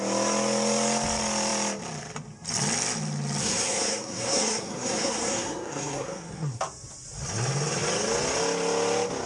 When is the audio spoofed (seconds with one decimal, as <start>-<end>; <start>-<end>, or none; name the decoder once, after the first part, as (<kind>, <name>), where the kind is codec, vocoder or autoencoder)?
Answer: 3.4-6.6 (codec, SNAC)